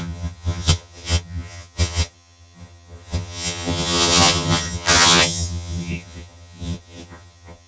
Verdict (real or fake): fake